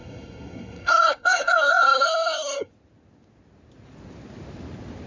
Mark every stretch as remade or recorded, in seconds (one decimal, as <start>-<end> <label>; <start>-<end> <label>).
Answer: 0.0-2.7 remade; 2.7-5.1 recorded